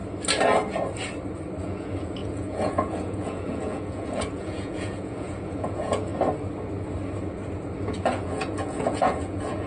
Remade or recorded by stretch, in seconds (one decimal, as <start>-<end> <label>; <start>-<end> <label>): 0.0-1.6 recorded; 1.6-6.1 remade; 6.1-7.8 recorded; 7.8-9.7 remade